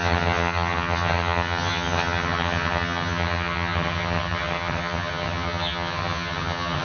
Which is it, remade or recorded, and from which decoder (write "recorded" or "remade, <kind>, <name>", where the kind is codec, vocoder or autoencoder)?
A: remade, vocoder, HiFi-GAN